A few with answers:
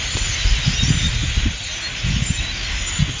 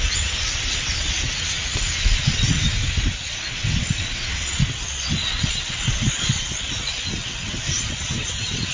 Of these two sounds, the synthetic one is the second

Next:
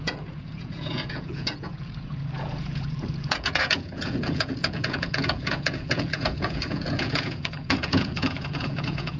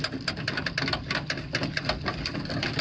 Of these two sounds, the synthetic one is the first